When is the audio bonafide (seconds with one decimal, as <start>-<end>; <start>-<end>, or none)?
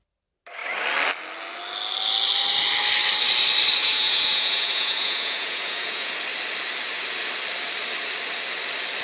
0.0-3.8; 6.1-9.0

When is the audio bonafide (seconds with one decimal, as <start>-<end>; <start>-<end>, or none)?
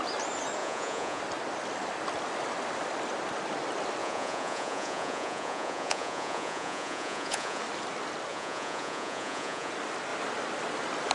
0.0-0.6; 1.2-4.0; 7.6-8.3; 9.7-11.1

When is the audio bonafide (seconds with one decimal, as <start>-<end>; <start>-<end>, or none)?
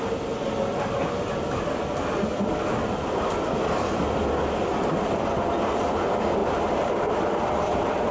0.0-6.4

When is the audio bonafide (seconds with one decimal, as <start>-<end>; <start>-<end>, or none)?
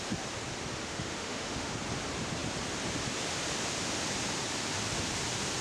0.0-0.8; 1.7-5.6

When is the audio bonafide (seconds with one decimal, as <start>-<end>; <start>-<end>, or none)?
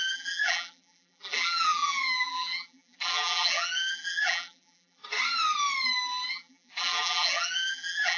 5.0-6.3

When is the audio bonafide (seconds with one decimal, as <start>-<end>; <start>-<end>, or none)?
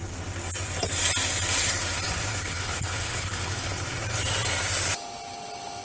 0.0-2.3; 3.7-5.8